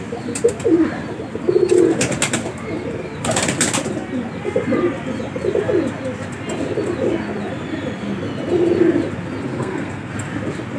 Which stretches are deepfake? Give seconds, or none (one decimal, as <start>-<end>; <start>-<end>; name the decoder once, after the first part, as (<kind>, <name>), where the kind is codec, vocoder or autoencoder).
9.5-10.1 (codec, SNAC)